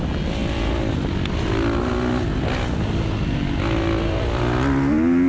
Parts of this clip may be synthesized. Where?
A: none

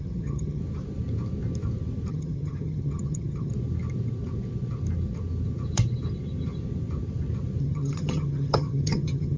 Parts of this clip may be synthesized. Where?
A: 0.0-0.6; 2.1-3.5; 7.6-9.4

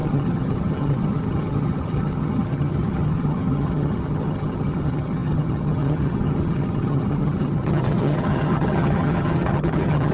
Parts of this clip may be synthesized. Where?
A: 0.0-10.1

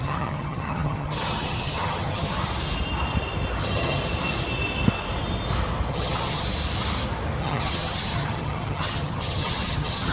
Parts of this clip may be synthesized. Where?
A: 0.0-2.4; 3.6-4.0; 5.9-6.4; 7.4-10.1

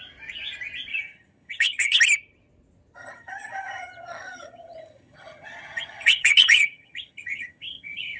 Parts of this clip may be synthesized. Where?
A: 0.9-2.0; 3.0-8.2